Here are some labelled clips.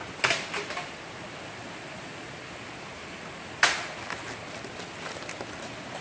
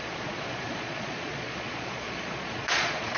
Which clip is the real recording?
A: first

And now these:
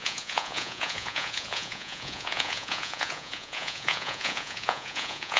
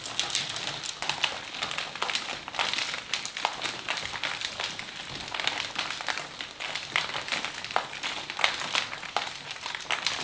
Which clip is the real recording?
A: second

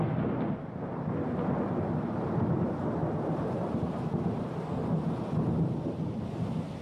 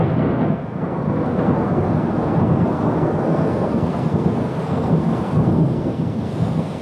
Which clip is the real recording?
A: first